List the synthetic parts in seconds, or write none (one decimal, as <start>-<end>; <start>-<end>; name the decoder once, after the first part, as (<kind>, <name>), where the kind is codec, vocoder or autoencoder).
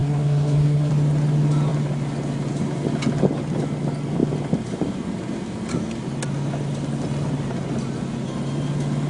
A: 0.0-0.9 (codec, SNAC)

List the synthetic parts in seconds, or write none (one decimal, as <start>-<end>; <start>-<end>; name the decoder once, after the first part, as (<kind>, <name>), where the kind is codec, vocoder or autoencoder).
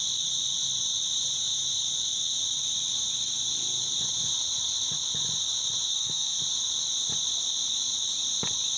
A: 5.9-6.4 (codec, SNAC)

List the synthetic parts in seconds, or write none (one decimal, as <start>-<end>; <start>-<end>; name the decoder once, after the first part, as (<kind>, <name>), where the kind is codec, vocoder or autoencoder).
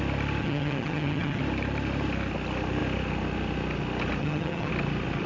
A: 0.4-1.4 (vocoder, HiFi-GAN); 4.2-4.7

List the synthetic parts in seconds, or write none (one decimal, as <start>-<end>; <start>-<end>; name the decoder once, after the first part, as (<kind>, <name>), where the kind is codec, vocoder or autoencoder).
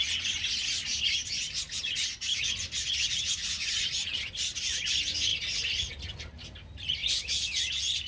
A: none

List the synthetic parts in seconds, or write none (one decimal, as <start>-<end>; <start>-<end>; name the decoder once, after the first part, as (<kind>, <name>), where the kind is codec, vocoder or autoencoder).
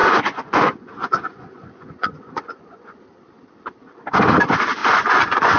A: 0.0-3.0 (vocoder, Vocos); 4.8-5.6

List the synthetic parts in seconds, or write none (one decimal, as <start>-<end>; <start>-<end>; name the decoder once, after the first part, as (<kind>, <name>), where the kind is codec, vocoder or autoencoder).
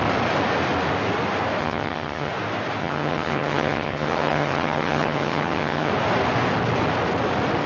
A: 1.6-2.3 (vocoder, HiFi-GAN); 2.8-5.9